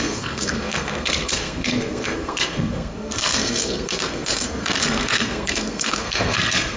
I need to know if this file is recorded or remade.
remade